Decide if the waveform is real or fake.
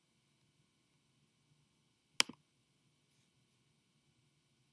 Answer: real